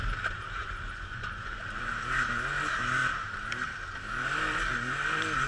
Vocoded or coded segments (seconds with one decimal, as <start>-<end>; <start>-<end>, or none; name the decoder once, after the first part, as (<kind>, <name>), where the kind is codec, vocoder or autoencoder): 0.6-1.9 (vocoder, Vocos)